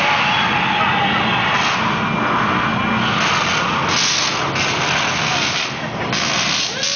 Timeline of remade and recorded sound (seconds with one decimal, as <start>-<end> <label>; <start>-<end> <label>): 0.0-7.0 recorded